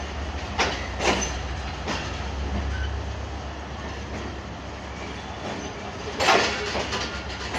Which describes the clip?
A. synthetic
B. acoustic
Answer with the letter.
B